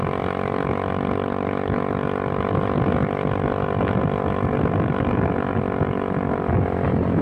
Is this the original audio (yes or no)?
yes